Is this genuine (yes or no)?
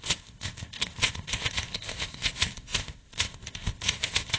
no